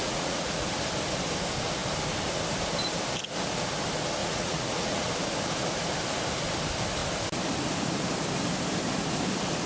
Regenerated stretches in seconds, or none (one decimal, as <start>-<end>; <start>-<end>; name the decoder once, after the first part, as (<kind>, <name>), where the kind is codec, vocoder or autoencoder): 0.0-0.8 (vocoder, Vocos); 4.2-5.1